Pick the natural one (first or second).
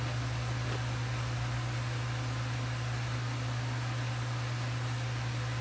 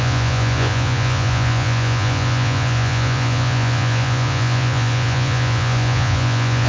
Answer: first